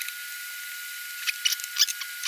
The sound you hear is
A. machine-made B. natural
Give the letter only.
B